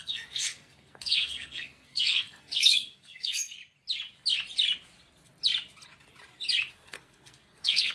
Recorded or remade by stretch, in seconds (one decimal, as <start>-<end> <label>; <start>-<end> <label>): 0.0-3.6 remade; 3.6-6.7 recorded; 6.7-7.9 remade